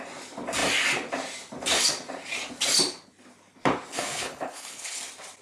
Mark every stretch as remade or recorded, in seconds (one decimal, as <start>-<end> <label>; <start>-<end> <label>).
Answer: 0.0-3.9 recorded; 3.9-5.0 remade; 5.0-5.4 recorded